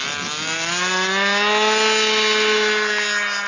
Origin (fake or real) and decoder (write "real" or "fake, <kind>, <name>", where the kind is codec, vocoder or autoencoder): real